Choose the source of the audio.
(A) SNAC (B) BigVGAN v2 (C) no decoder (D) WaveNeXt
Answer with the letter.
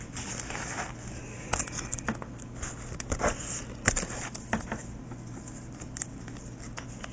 C